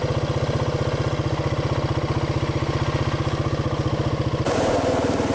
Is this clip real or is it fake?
real